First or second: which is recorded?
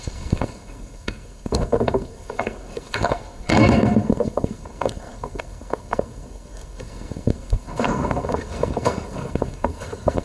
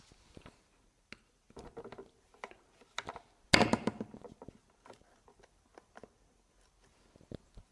second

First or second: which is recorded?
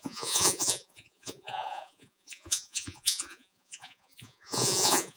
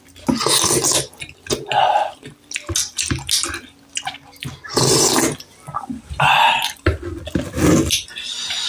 second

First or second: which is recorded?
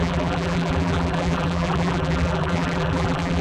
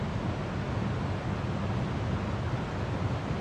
second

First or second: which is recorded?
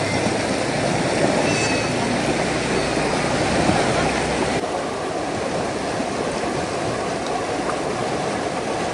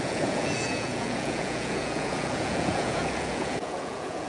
first